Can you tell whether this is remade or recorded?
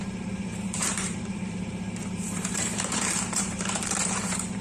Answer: remade